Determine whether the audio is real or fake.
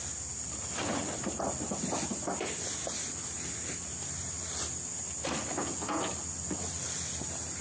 real